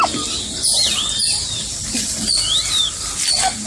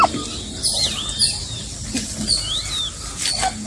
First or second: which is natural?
second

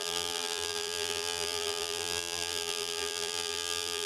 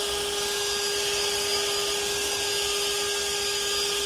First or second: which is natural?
second